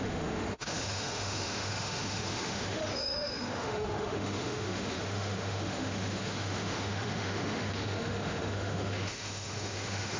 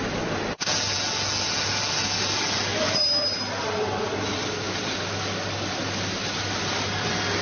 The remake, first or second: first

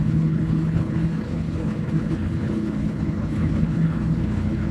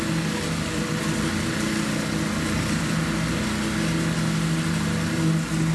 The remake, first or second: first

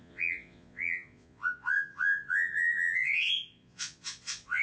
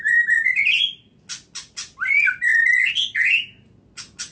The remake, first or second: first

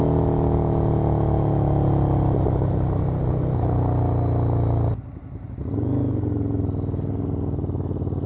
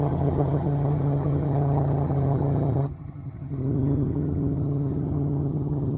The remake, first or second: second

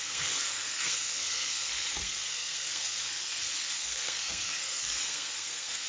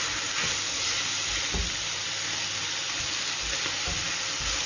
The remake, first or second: first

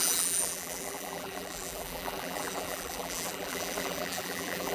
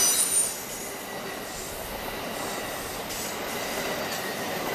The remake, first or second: first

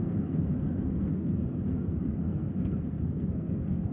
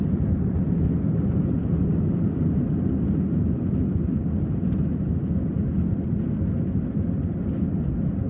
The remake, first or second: first